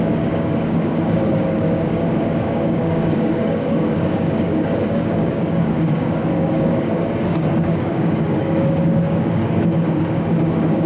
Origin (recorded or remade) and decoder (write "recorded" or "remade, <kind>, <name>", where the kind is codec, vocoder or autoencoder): remade, codec, DAC